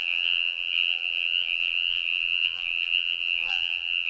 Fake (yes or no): yes